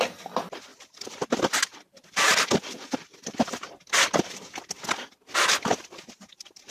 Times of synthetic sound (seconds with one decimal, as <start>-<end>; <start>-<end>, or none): 0.7-4.7